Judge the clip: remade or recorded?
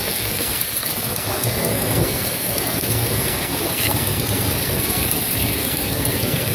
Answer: remade